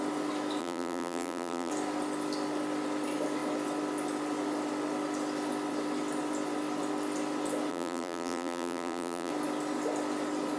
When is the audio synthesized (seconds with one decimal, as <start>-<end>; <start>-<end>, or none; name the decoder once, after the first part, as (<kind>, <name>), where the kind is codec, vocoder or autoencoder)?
0.6-1.7 (vocoder, BigVGAN v2); 7.7-9.3